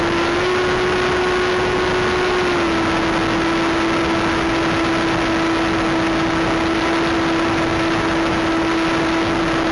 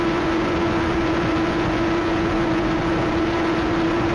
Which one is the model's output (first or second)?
second